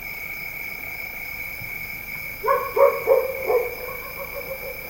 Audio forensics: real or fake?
real